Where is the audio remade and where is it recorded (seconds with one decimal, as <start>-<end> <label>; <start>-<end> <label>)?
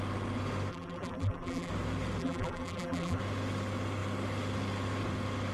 0.0-0.7 recorded; 0.7-1.7 remade; 1.7-2.2 recorded; 2.2-3.2 remade; 3.2-5.5 recorded